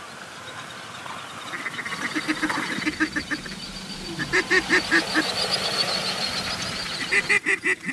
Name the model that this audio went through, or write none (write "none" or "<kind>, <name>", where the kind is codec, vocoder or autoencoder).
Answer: none